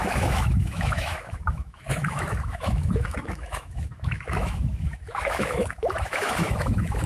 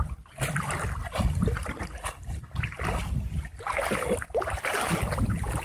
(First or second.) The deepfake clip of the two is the first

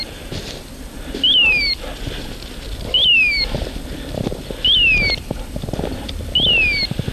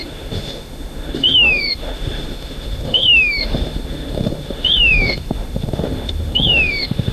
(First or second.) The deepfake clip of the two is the second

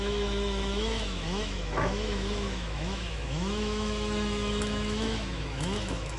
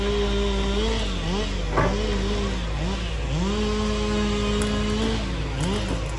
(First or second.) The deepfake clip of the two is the first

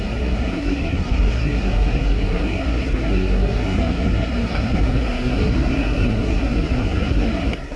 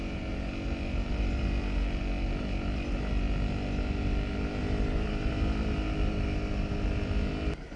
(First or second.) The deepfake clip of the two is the first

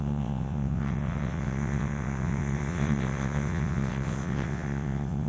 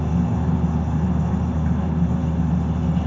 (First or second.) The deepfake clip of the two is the first